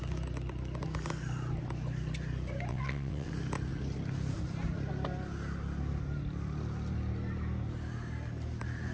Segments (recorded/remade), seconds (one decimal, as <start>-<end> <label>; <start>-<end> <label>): 0.0-2.7 recorded; 2.7-3.3 remade; 3.3-8.9 recorded